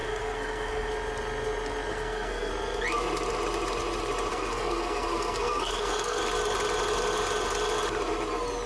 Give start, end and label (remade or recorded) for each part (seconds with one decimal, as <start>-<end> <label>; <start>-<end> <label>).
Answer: 0.0-0.9 remade; 0.9-1.9 recorded; 1.9-2.5 remade; 2.5-4.3 recorded; 4.3-6.2 remade; 6.2-8.7 recorded